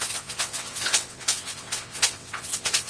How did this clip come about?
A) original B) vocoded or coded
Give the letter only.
B